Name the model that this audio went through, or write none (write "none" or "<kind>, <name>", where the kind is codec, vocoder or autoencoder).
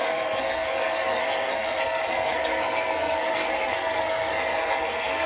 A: codec, SNAC